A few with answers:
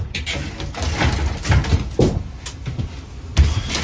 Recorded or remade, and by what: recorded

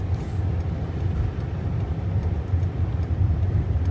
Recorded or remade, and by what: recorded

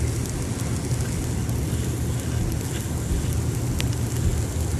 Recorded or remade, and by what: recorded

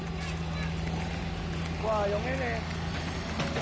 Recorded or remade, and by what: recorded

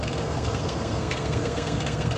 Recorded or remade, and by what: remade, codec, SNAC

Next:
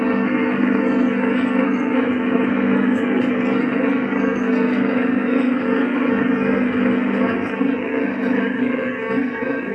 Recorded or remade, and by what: remade, codec, SNAC